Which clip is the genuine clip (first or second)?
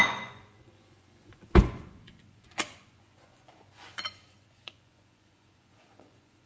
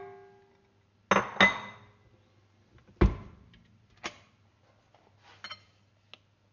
second